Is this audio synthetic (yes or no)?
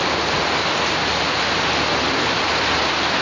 no